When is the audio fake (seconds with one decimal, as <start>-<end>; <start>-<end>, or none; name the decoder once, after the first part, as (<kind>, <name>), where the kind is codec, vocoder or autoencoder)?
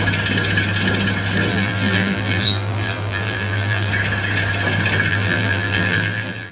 1.5-3.9 (vocoder, BigVGAN v2); 5.1-6.5